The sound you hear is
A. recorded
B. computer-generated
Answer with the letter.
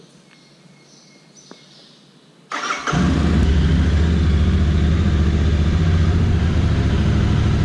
A